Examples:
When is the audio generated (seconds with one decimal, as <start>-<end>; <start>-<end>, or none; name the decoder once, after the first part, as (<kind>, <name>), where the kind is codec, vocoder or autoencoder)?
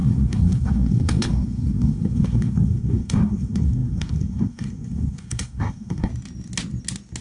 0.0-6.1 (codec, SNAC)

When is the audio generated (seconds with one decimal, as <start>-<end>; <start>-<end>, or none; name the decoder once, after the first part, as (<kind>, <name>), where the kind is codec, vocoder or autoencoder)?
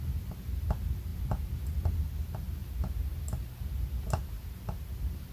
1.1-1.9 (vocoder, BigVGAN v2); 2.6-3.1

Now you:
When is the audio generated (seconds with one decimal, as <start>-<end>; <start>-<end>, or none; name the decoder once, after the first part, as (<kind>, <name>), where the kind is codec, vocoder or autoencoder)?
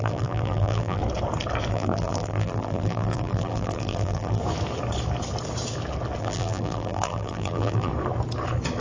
0.0-1.0 (vocoder, BigVGAN v2); 1.7-4.4; 6.2-7.9